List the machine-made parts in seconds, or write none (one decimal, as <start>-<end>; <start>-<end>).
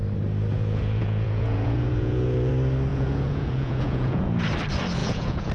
0.5-2.5; 2.9-4.4; 5.0-5.5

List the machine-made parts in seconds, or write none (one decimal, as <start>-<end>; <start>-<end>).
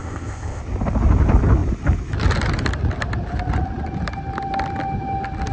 0.0-0.6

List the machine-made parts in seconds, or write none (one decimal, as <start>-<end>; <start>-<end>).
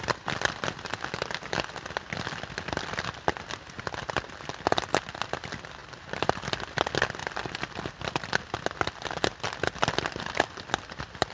5.8-6.4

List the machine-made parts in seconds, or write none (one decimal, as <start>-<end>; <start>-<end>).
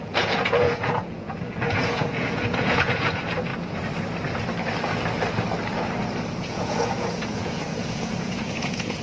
0.0-3.5; 6.4-9.0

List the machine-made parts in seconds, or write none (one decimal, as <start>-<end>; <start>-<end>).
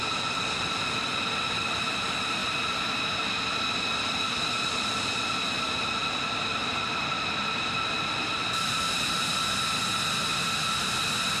none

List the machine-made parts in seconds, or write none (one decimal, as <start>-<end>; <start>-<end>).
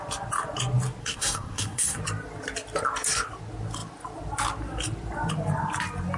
1.0-2.0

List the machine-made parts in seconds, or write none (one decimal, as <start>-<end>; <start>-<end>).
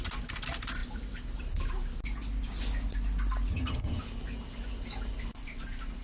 3.5-4.0